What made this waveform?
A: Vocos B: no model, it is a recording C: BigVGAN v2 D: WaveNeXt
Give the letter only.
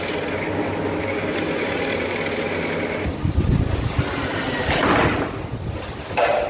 B